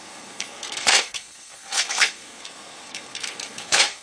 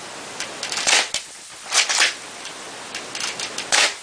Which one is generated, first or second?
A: first